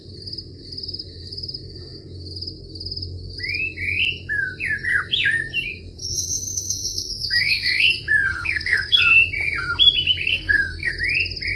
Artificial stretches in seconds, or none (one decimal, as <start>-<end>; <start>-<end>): 6.0-7.9; 8.3-9.0; 10.3-10.9